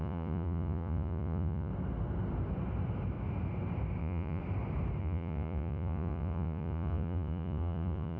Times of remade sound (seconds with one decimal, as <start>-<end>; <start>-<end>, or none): 0.0-1.7; 4.0-4.4; 5.0-8.2